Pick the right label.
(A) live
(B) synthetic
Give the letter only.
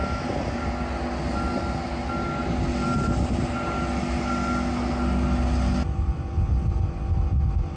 A